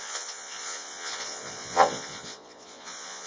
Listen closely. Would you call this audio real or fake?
fake